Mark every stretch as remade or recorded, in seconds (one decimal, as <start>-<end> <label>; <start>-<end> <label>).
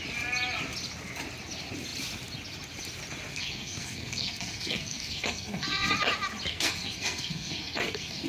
0.0-3.3 recorded; 3.3-5.9 remade; 5.9-6.5 recorded; 6.5-8.3 remade